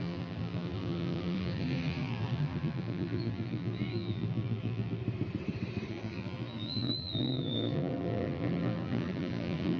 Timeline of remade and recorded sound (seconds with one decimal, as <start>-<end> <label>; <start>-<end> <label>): 0.0-5.0 remade; 5.0-5.9 recorded; 5.9-9.8 remade